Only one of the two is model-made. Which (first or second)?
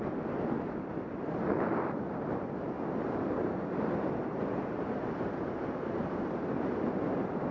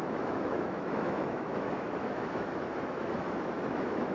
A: second